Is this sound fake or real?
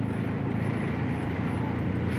fake